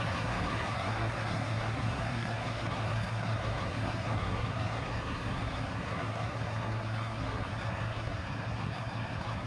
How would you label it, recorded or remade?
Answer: remade